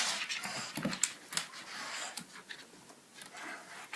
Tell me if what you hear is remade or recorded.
recorded